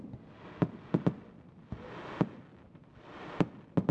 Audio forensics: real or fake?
real